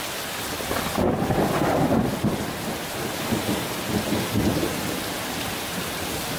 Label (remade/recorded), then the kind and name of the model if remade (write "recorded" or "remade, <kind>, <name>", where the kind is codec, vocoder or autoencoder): recorded